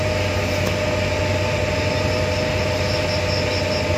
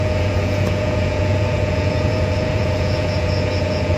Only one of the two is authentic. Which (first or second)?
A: first